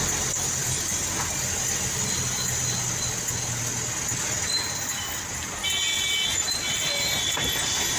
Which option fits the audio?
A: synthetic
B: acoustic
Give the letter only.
B